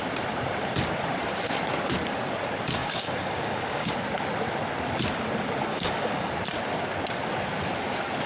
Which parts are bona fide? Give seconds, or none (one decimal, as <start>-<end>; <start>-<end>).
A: 0.0-2.8; 3.9-5.7; 6.3-8.3